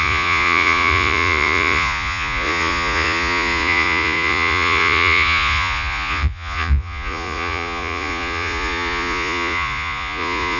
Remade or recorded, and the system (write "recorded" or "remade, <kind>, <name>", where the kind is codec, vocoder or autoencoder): remade, vocoder, Vocos